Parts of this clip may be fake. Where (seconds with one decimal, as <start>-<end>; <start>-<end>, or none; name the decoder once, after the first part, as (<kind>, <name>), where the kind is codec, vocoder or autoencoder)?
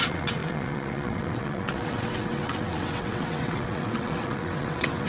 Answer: 0.0-5.1 (vocoder, WaveNeXt)